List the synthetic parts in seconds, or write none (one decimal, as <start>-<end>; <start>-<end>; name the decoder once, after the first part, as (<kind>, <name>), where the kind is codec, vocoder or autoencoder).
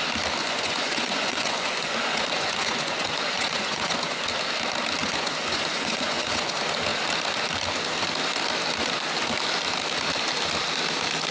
0.4-4.3 (vocoder, Vocos); 5.0-6.5